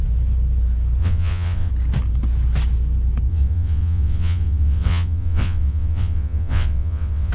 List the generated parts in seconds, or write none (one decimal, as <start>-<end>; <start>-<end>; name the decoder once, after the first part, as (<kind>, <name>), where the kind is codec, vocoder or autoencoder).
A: 1.0-1.7 (vocoder, WaveNeXt); 3.3-7.3